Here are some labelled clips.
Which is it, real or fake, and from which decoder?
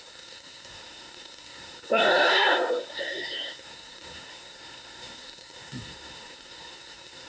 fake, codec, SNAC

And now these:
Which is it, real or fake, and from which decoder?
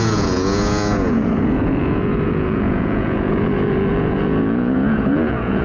fake, vocoder, Vocos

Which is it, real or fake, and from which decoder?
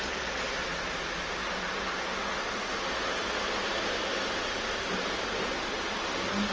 real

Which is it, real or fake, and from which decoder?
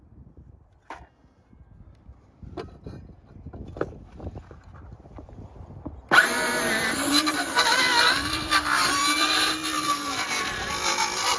fake, vocoder, BigVGAN v2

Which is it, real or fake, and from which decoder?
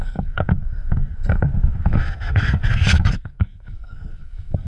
fake, codec, SNAC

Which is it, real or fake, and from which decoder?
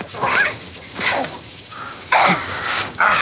fake, codec, DAC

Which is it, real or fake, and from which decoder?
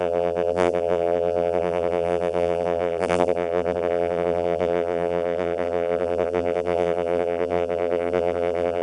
fake, vocoder, BigVGAN v2